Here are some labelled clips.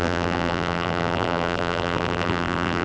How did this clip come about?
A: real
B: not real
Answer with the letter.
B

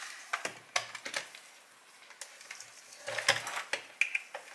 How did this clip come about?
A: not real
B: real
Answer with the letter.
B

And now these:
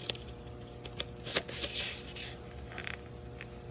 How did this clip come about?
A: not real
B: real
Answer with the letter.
B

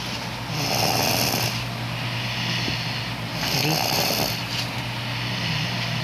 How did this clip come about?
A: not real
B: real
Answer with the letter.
B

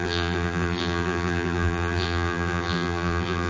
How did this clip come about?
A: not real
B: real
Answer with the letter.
A